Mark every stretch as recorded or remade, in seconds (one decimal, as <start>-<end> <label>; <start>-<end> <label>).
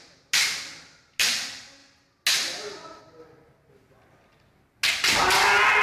0.0-5.8 recorded